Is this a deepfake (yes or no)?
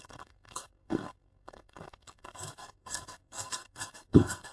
yes